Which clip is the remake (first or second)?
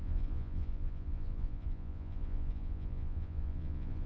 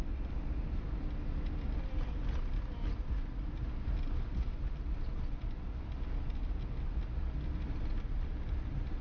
first